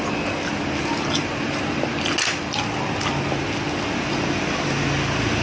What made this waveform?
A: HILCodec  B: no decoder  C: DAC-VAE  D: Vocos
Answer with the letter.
B